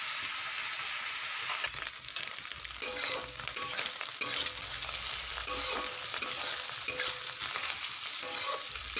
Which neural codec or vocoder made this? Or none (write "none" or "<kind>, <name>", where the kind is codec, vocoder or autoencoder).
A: none